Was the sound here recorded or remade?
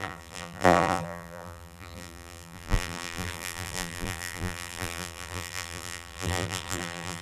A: remade